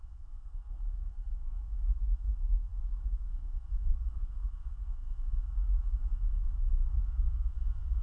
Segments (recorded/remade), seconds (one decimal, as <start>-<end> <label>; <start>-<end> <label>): 0.0-8.0 remade